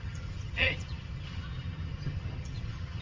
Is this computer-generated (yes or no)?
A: yes